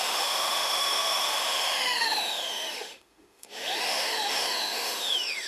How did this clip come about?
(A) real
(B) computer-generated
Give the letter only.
B